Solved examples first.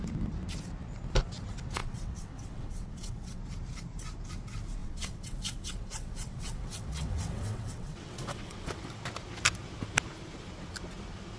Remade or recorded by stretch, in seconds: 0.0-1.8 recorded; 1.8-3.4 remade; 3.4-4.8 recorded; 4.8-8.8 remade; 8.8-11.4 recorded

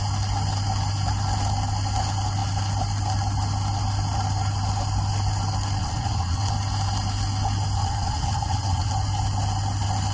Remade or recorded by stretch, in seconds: 0.0-5.8 recorded; 5.8-6.5 remade; 6.5-7.8 recorded; 7.8-8.9 remade; 8.9-10.1 recorded

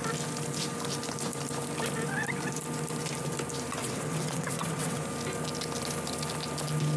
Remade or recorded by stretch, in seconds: 0.0-3.8 recorded; 3.8-5.0 remade; 5.0-7.0 recorded